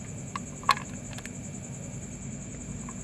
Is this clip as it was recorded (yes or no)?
yes